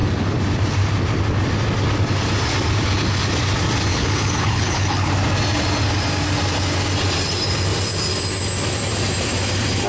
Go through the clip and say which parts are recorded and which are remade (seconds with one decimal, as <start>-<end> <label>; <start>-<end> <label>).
0.0-3.9 recorded; 3.9-5.1 remade; 5.1-9.9 recorded